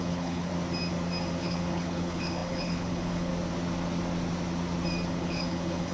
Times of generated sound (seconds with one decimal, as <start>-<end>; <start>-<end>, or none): 0.0-0.5; 1.4-3.3; 5.1-5.9